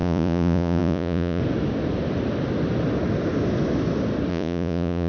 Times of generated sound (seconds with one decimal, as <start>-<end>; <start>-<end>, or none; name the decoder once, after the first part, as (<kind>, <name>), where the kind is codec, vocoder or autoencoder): 0.0-1.4 (vocoder, Vocos); 4.3-5.1